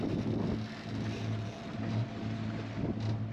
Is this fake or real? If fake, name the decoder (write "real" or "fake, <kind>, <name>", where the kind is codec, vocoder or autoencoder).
real